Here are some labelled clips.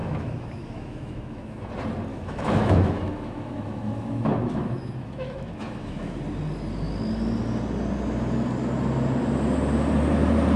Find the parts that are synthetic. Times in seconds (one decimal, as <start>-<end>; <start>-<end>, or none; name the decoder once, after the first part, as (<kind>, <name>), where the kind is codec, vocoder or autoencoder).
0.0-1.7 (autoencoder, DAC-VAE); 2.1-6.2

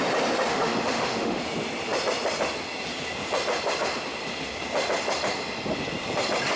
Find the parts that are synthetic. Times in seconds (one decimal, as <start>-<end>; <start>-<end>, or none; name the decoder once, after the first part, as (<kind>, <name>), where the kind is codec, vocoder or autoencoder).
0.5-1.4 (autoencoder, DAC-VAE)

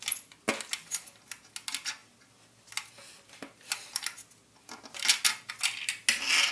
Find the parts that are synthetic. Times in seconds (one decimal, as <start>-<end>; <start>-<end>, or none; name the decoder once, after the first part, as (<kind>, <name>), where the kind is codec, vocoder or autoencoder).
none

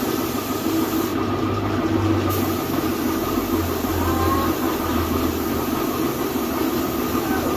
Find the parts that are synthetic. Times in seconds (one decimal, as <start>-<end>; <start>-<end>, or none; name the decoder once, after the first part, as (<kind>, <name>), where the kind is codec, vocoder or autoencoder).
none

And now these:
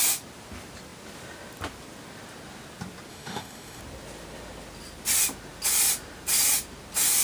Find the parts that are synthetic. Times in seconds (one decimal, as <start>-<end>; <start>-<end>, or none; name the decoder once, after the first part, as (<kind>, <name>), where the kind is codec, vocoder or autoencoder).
3.1-3.8 (autoencoder, DAC-VAE)

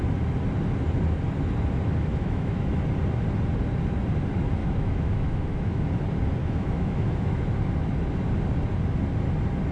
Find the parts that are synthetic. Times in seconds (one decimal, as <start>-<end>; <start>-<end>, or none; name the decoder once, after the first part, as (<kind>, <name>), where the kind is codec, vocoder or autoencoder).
2.1-2.8 (autoencoder, DAC-VAE); 4.6-5.8; 6.4-7.4